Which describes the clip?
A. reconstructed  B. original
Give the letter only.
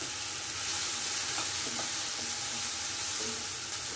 B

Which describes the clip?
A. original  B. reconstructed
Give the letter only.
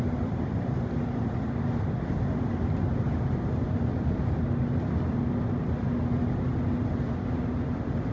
A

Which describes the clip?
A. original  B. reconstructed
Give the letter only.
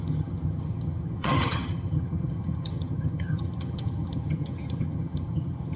B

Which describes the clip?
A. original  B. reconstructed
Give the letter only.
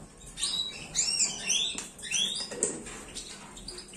A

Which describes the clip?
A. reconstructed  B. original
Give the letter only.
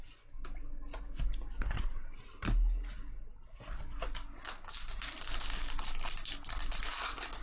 B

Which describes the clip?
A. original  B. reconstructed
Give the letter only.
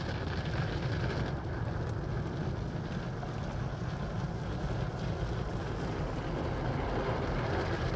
A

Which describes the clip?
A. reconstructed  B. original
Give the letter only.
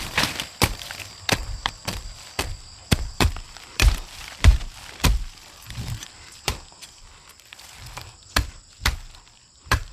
A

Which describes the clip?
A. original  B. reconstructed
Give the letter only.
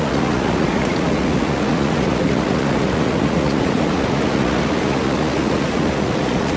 B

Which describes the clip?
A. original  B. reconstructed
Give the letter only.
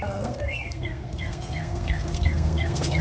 B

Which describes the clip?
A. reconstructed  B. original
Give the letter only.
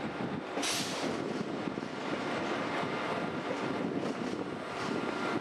B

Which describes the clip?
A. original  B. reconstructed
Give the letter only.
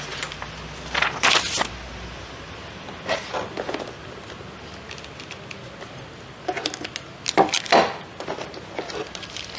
A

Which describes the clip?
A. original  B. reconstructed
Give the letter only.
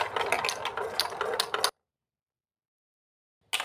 A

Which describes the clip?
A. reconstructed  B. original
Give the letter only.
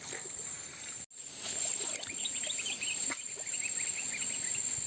B